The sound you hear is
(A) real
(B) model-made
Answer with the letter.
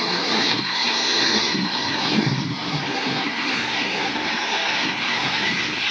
B